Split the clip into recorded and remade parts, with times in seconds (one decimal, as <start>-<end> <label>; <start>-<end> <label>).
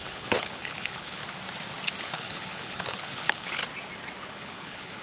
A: 0.0-1.2 remade; 1.2-2.0 recorded; 2.0-3.6 remade; 3.6-4.2 recorded; 4.2-5.0 remade